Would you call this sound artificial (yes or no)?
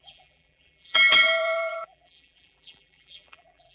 yes